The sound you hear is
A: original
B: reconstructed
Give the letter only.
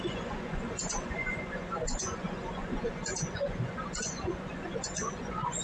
B